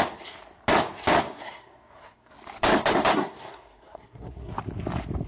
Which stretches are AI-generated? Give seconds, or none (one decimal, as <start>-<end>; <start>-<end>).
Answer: 1.3-2.3; 3.1-4.5